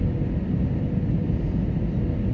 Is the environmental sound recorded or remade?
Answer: recorded